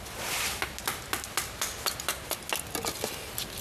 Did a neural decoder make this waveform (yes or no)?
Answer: no